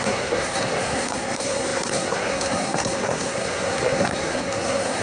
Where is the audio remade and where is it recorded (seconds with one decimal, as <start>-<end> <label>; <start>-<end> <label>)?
0.0-5.0 remade